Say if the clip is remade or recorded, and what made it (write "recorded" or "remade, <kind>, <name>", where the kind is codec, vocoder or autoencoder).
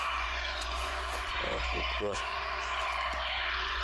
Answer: remade, vocoder, Vocos